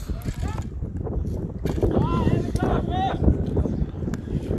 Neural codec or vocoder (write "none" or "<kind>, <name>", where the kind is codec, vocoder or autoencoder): none